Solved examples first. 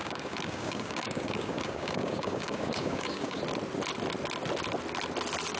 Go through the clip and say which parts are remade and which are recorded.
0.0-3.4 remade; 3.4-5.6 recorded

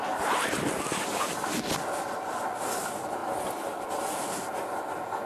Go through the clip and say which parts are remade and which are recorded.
0.0-5.3 recorded